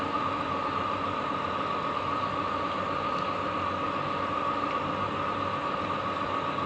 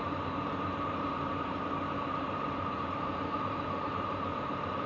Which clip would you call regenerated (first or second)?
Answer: second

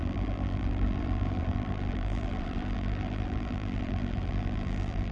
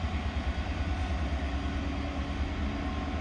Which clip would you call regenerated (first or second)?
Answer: first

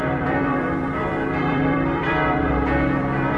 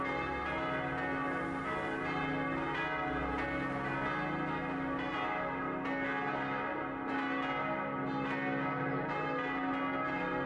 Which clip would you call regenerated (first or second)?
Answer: first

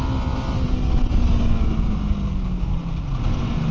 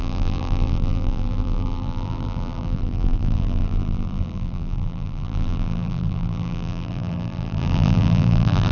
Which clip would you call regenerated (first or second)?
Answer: second